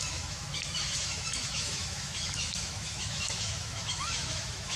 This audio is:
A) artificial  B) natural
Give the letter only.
A